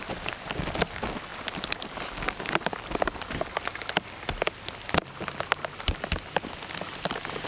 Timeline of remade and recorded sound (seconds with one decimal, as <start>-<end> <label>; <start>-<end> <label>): 0.0-7.5 recorded